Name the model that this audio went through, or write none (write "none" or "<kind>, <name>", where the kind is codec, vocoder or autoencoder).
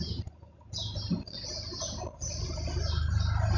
none